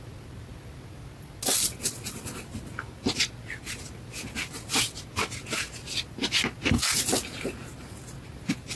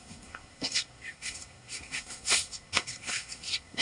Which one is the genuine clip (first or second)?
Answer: first